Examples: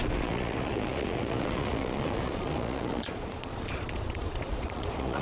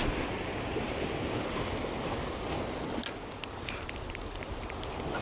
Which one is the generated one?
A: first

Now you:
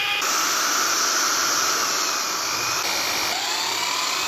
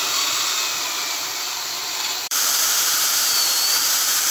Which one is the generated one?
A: second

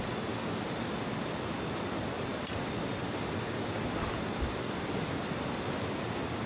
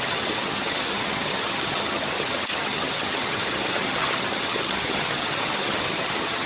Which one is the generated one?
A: second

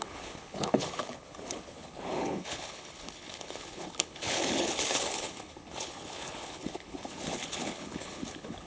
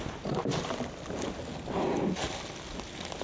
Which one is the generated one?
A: first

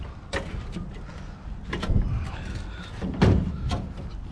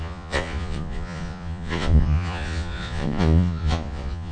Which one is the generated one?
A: second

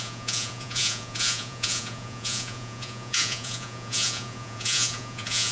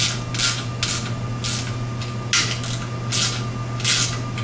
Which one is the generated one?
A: first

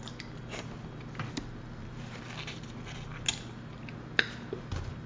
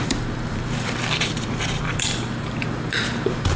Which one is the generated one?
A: second